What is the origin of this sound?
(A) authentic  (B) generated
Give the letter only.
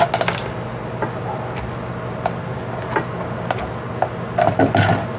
A